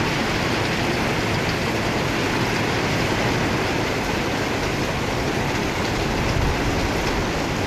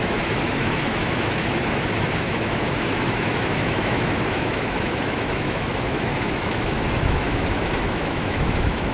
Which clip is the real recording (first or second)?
first